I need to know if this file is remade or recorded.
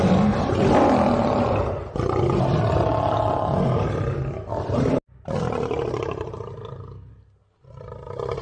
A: recorded